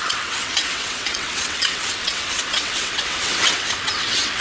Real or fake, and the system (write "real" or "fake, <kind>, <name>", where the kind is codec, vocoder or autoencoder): fake, vocoder, WaveNeXt